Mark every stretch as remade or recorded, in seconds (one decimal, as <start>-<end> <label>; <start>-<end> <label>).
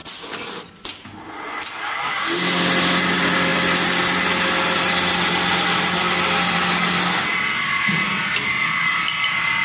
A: 0.0-9.6 recorded